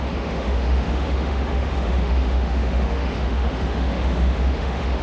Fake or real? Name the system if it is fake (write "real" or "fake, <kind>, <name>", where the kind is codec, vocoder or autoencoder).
fake, autoencoder, DAC-VAE